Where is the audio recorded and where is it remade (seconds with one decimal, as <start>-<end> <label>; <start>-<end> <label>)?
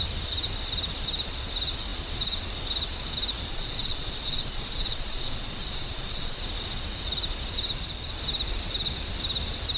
0.0-3.5 recorded; 3.5-6.4 remade; 6.4-9.8 recorded